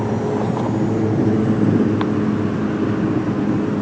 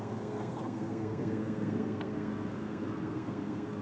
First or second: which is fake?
second